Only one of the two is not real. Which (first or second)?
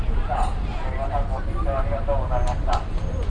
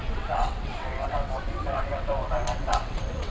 second